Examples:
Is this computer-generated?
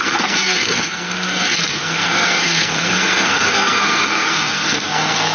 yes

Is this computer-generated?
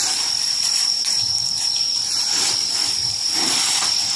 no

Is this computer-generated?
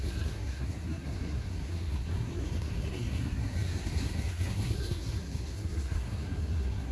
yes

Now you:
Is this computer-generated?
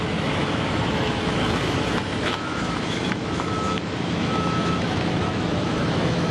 yes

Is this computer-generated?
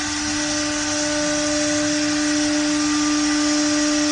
no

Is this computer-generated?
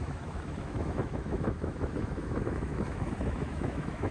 yes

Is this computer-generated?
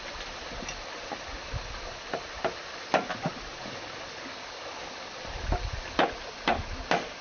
no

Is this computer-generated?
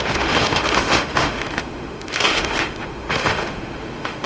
yes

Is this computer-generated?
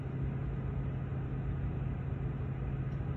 no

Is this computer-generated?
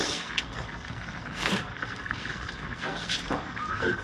yes